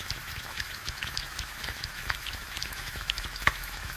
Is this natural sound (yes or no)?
no